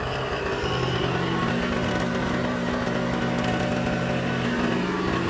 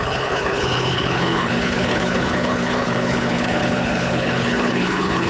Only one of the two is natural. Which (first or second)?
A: first